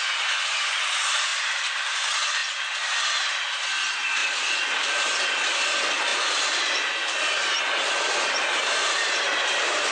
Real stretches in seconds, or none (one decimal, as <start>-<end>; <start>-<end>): 0.0-9.9

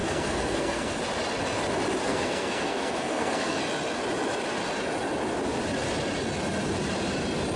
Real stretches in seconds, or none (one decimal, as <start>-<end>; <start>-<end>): 1.0-2.0; 3.6-7.6

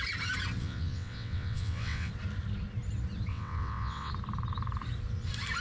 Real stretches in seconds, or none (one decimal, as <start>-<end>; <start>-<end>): 0.0-0.6; 2.1-3.3; 4.1-5.6

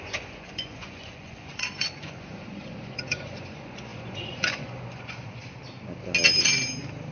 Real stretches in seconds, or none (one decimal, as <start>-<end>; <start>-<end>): 5.4-7.1

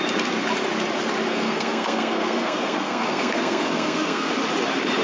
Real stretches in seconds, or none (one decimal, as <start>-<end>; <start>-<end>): 0.0-1.3; 4.3-5.0